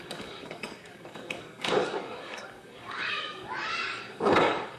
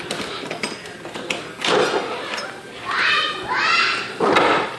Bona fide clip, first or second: second